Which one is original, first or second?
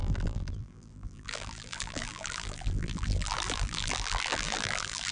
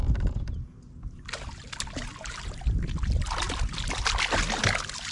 second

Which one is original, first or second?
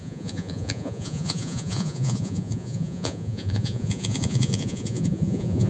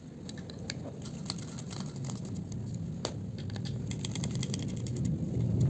second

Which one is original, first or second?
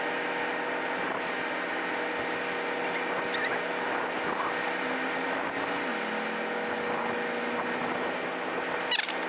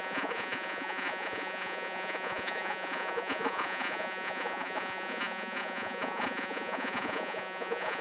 first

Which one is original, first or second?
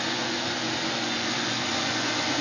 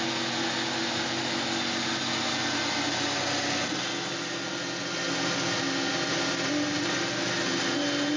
second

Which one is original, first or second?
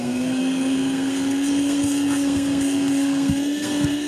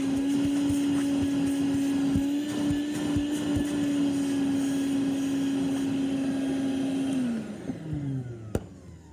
second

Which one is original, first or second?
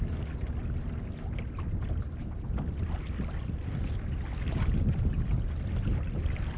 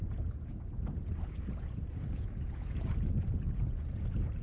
first